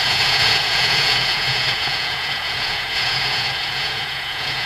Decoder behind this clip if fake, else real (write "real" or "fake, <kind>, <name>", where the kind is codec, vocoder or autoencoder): fake, vocoder, Vocos